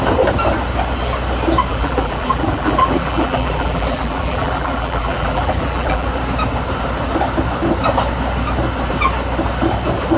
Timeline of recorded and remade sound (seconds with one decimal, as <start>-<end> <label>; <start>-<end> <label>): 0.0-1.7 recorded; 1.7-6.1 remade; 6.1-10.2 recorded